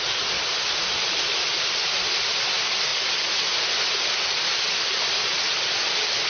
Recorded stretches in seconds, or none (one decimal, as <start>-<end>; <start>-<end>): 0.0-6.3